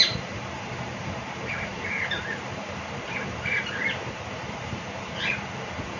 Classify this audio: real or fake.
fake